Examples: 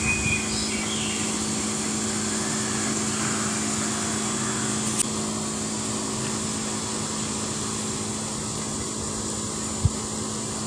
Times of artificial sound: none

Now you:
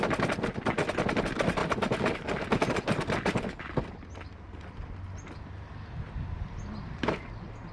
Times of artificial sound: none

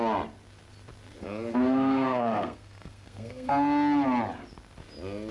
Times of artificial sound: 1.2-3.5 (codec, SNAC)

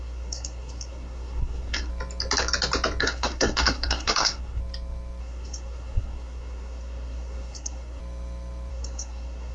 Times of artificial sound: 0.0-1.9 (codec, SNAC); 3.0-4.6; 5.2-8.0; 8.7-9.5